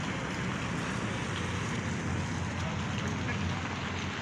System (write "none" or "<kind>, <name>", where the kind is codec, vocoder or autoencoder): none